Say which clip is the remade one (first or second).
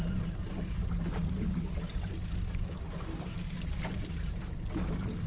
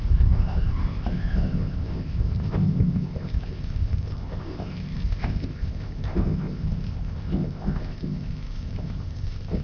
second